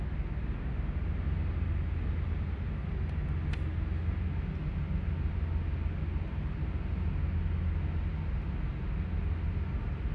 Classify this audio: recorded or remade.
recorded